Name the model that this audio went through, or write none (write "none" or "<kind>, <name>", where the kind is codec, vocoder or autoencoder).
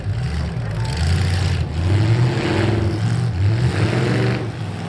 none